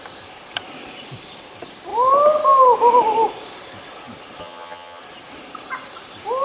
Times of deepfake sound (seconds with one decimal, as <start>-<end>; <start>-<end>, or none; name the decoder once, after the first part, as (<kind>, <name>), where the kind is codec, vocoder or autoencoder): 4.4-5.0 (vocoder, HiFi-GAN)